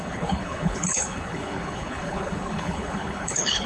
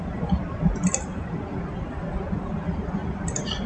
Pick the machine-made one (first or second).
first